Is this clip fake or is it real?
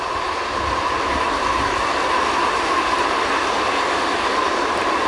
real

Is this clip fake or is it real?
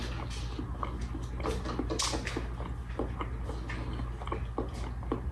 real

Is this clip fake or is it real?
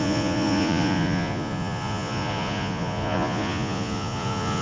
fake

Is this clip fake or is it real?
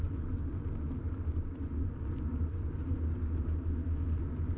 real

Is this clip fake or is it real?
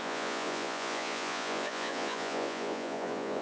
fake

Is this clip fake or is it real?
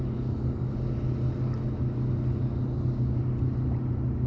real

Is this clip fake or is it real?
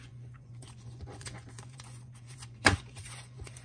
fake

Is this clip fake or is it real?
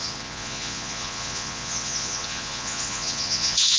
fake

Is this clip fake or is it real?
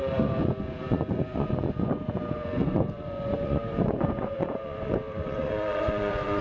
fake